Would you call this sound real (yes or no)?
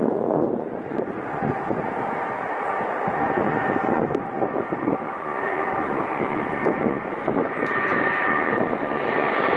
no